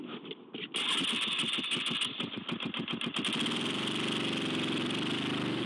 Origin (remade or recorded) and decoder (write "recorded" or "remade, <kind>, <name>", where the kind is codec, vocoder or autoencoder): recorded